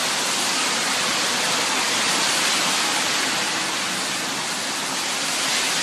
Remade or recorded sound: recorded